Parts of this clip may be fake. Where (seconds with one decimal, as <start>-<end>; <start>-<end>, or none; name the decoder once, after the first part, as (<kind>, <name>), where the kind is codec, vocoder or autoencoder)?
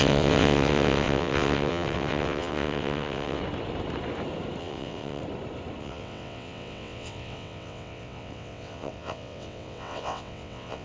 0.0-3.4 (vocoder, WaveNeXt); 4.6-5.2; 5.8-10.8